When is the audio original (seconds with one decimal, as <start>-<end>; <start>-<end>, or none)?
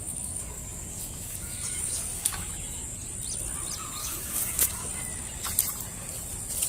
2.5-4.0; 4.9-6.7